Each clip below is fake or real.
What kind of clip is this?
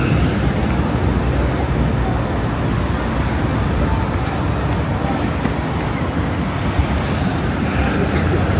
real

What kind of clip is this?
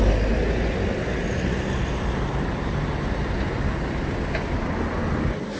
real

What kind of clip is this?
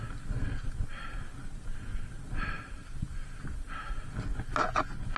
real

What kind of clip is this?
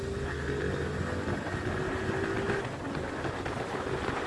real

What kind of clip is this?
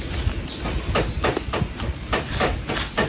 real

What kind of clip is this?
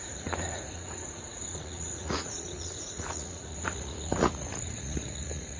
fake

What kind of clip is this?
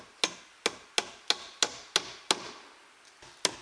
real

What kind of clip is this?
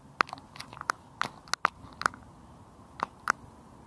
real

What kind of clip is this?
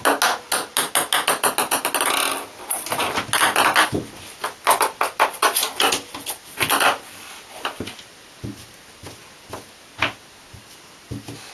real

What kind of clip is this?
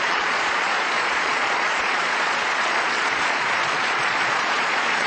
fake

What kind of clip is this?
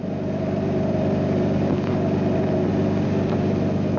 real